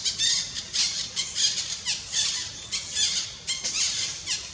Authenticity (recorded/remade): recorded